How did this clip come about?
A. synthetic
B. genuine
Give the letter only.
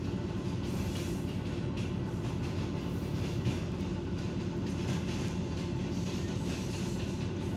B